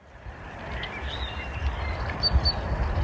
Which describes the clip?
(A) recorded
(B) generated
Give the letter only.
A